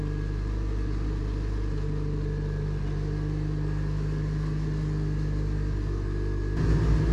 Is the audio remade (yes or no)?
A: no